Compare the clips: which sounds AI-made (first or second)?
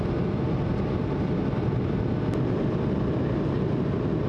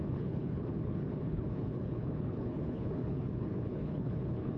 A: second